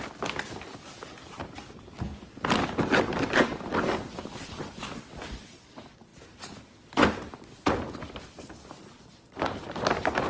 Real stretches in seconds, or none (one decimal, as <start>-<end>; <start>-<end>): 0.0-10.3